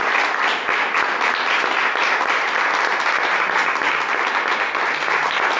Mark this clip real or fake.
real